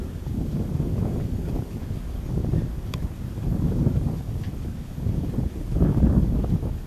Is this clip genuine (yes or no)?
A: no